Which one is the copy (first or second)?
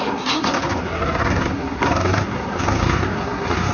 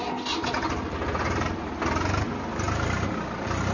first